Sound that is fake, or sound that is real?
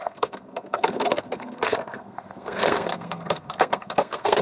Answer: fake